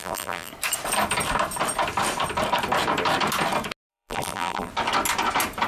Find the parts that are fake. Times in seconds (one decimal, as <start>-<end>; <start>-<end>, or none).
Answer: 0.0-0.5; 3.9-4.7